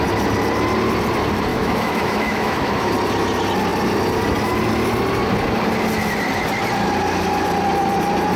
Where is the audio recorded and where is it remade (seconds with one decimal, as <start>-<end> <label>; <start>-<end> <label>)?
0.0-1.5 recorded; 1.5-2.9 remade; 2.9-8.4 recorded